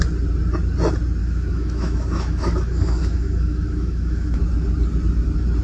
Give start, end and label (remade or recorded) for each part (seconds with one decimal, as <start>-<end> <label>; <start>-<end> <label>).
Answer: 0.0-1.2 recorded; 1.2-4.4 remade; 4.4-5.6 recorded